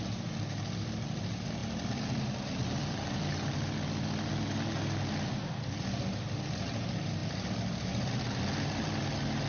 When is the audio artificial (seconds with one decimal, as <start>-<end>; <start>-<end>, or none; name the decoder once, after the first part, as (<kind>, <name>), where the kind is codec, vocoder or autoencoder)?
1.6-4.3 (vocoder, BigVGAN v2)